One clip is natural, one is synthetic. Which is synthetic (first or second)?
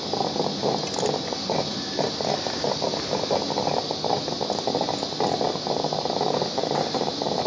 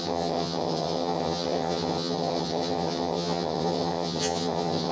second